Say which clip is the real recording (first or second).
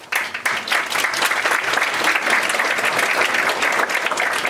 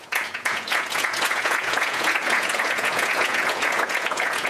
first